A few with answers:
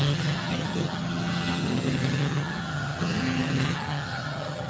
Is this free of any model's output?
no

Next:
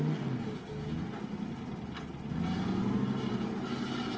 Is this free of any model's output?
yes